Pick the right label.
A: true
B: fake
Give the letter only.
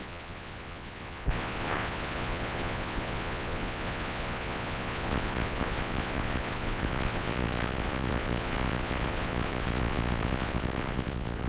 B